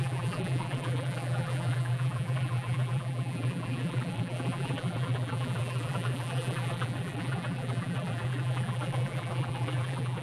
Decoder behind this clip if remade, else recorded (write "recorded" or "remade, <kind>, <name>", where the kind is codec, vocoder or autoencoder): remade, vocoder, BigVGAN v2